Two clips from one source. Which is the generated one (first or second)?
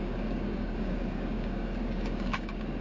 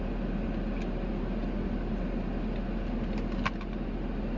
first